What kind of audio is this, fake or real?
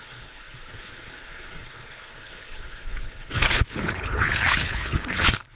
fake